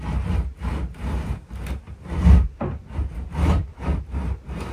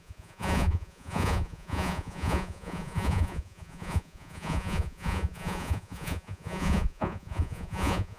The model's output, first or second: second